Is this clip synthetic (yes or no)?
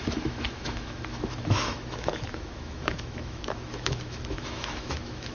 yes